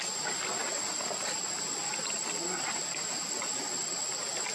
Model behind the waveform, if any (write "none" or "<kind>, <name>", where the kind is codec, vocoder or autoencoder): none